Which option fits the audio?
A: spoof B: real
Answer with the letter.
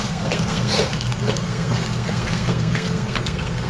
A